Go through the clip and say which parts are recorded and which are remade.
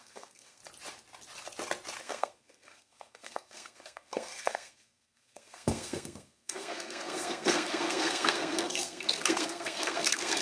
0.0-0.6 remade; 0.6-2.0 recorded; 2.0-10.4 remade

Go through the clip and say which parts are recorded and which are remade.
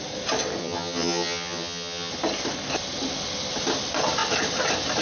0.0-0.6 recorded; 0.6-2.1 remade; 2.1-5.0 recorded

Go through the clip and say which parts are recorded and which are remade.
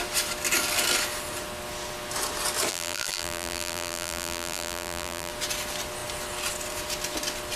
0.0-2.7 recorded; 2.7-5.3 remade; 5.3-7.6 recorded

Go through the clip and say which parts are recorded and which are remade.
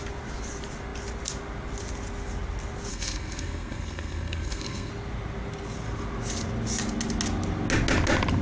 0.0-2.9 recorded; 2.9-4.9 remade; 4.9-8.4 recorded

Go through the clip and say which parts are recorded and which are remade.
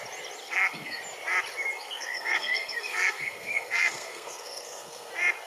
0.0-0.4 recorded; 0.4-1.0 remade; 1.0-1.8 recorded; 1.8-5.1 remade; 5.1-5.5 recorded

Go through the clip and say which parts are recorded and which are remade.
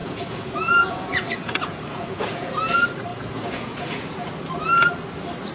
0.0-2.5 remade; 2.5-3.1 recorded; 3.1-4.3 remade; 4.3-5.5 recorded